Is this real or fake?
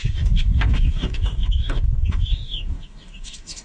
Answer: fake